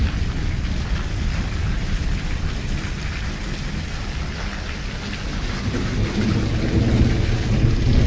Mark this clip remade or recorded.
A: recorded